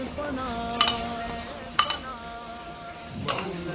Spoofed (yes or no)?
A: no